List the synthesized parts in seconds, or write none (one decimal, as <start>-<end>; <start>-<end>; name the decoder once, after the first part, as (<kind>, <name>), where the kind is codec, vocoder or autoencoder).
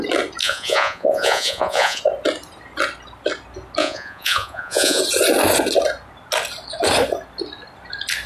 0.4-2.0 (vocoder, Vocos); 3.8-5.0